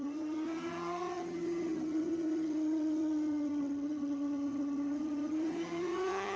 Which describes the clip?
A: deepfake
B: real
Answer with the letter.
A